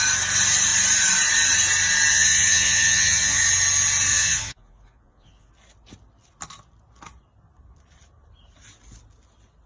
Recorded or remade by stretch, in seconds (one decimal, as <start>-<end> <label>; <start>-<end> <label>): 0.0-2.1 recorded; 2.1-3.4 remade; 3.4-4.1 recorded; 4.1-5.5 remade; 5.5-9.7 recorded